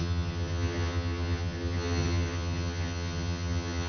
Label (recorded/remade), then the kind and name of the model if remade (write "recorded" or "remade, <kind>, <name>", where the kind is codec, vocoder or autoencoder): remade, vocoder, HiFi-GAN